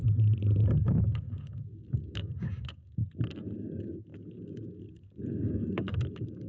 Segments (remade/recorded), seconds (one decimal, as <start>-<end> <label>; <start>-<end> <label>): 0.0-1.0 recorded; 1.0-3.0 remade; 3.0-3.6 recorded; 3.6-6.5 remade